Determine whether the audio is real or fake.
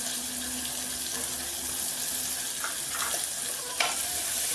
real